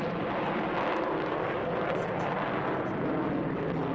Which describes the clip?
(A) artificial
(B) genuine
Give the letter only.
B